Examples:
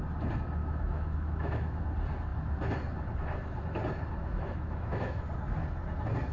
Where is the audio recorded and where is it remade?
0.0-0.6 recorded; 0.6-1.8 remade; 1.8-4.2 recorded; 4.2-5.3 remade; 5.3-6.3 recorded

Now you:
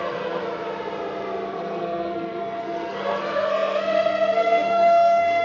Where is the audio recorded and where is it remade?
0.0-0.4 remade; 0.4-1.5 recorded; 1.5-5.4 remade

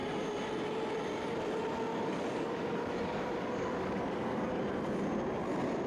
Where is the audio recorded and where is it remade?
0.0-1.9 recorded; 1.9-4.6 remade; 4.6-5.9 recorded

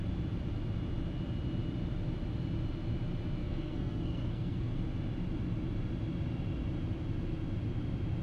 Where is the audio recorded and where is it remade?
0.0-3.4 recorded; 3.4-4.8 remade; 4.8-8.2 recorded

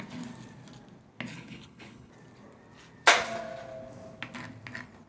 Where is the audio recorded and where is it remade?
0.0-1.3 recorded; 1.3-2.1 remade; 2.1-5.1 recorded

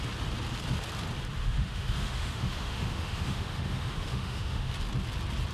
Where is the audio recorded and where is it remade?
0.0-1.4 recorded; 1.4-4.7 remade; 4.7-5.5 recorded

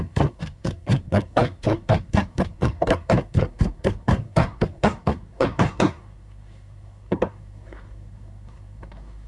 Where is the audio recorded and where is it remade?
0.0-9.3 remade